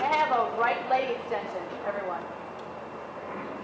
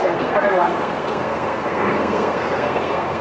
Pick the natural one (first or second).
first